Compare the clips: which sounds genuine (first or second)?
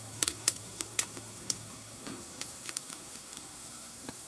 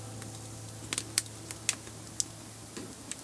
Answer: second